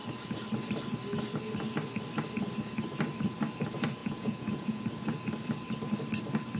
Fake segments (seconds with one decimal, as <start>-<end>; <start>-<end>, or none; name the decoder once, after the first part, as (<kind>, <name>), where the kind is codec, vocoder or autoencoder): 4.0-4.8 (vocoder, Vocos)